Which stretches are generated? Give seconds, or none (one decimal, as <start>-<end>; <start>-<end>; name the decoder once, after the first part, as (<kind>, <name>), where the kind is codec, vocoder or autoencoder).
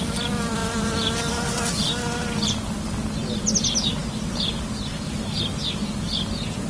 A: none